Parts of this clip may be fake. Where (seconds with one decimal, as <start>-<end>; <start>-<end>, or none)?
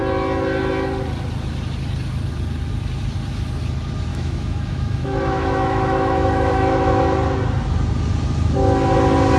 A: 4.1-7.0